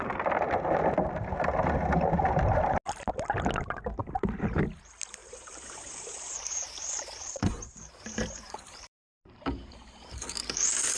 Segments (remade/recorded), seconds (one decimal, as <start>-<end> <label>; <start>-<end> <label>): 0.0-4.0 recorded; 4.0-4.6 remade; 4.6-5.2 recorded; 5.2-10.1 remade; 10.1-11.0 recorded